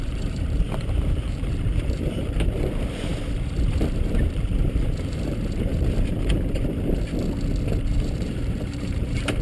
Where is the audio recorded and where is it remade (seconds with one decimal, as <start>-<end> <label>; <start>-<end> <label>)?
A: 0.0-3.1 remade; 3.1-4.1 recorded; 4.1-5.7 remade; 5.7-7.8 recorded; 7.8-9.4 remade